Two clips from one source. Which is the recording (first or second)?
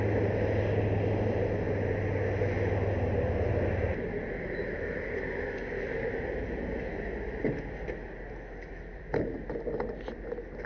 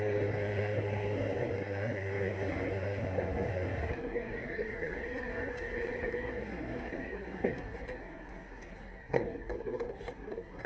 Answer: first